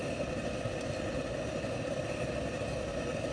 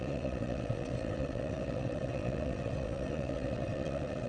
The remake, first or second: second